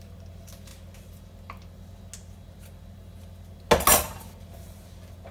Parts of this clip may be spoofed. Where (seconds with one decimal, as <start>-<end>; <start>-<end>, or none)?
none